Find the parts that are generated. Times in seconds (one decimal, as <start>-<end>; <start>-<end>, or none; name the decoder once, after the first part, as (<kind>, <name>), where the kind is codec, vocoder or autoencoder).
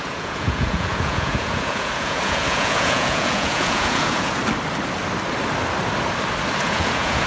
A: 0.0-4.4 (vocoder, Vocos); 6.6-7.3